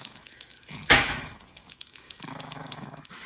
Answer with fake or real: fake